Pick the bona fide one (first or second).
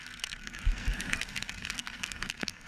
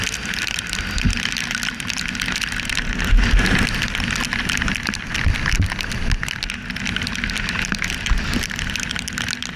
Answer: second